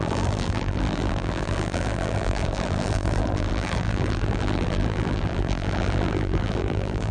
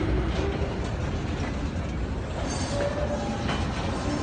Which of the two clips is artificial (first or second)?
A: first